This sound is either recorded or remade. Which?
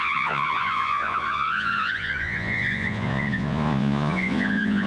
remade